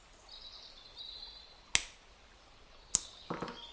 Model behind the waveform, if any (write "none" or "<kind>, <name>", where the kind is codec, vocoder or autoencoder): none